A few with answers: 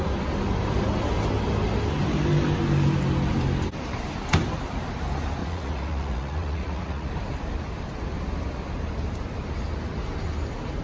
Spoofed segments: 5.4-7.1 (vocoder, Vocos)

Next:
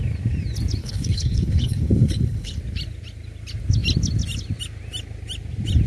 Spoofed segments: 0.8-2.6 (codec, HILCodec)

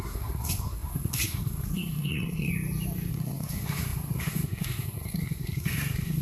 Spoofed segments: 0.0-2.5 (codec, SNAC); 3.1-6.2

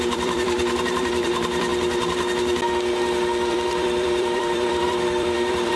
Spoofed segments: 0.0-1.7 (vocoder, BigVGAN v2); 3.5-5.8

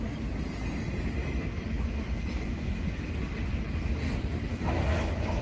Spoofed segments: 1.2-3.1 (autoencoder, DAC-VAE); 4.5-5.4

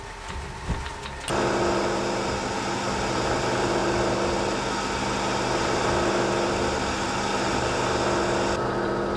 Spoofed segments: none

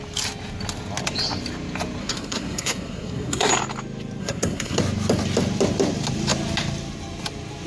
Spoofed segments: 2.0-3.5 (codec, SNAC); 4.2-4.8

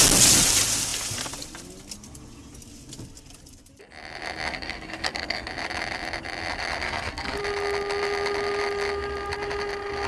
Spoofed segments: 4.5-5.5 (codec, SNAC); 6.8-7.4